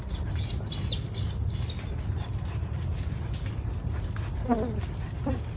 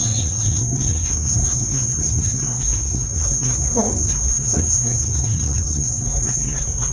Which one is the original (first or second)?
first